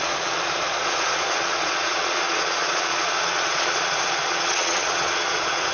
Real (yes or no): no